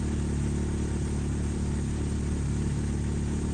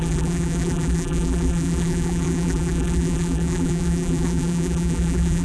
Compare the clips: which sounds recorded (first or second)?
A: first